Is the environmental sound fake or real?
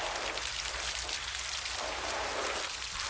real